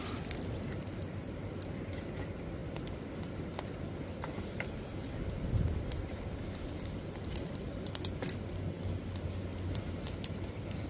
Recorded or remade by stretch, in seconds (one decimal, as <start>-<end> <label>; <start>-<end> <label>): 0.0-1.0 recorded; 1.0-1.6 remade; 1.6-9.5 recorded; 9.5-10.1 remade; 10.1-10.9 recorded